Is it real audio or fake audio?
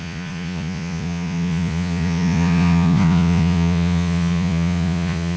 fake